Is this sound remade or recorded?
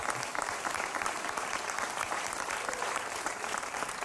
remade